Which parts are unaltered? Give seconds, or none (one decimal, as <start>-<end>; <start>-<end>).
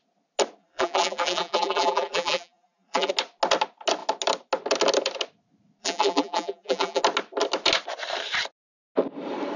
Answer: 0.0-0.6; 3.1-5.8; 7.0-9.6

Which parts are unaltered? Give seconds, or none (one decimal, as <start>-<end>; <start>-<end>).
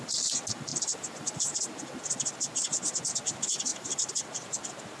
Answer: 0.0-0.7; 1.6-3.7; 4.2-5.0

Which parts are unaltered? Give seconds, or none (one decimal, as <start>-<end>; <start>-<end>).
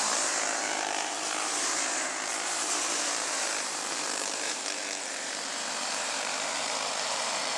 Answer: none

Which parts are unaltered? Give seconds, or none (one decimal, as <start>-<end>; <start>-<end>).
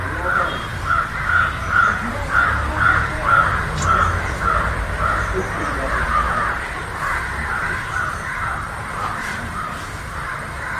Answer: 6.8-7.5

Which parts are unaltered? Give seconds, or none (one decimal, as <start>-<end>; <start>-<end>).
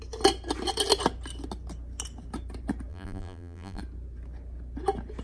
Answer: 0.0-2.9; 3.8-5.2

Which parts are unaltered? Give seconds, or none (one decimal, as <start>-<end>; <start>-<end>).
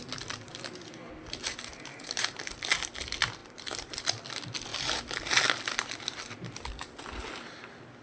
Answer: 0.0-1.9; 2.5-3.4; 4.0-8.0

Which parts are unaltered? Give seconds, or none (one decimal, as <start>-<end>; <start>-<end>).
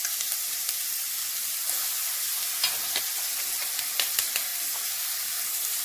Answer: 0.0-4.5; 5.3-5.8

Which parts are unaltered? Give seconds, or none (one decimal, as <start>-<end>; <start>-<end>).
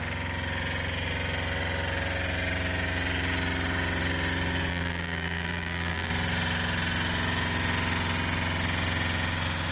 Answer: 0.0-4.7; 6.1-9.7